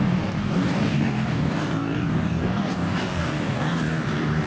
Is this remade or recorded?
remade